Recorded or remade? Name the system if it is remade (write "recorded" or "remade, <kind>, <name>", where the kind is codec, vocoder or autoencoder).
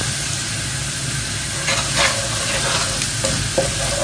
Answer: recorded